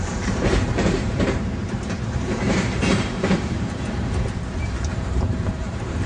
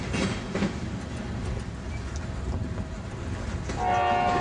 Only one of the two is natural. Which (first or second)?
second